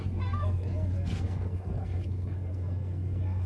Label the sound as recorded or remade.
remade